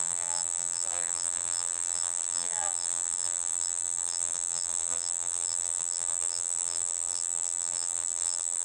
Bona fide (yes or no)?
no